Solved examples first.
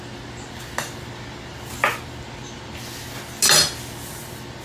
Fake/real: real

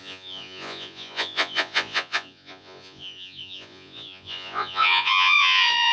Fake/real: fake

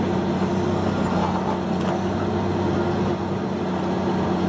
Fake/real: real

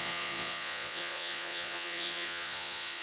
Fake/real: fake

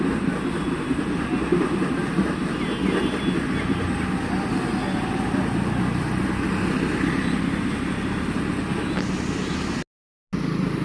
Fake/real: real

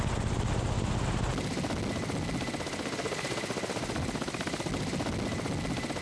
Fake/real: real